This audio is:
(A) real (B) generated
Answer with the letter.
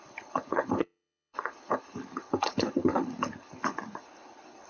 B